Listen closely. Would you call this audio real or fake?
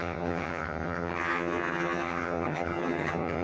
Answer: fake